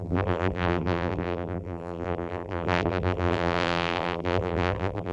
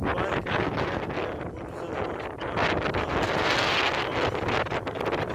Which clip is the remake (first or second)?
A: first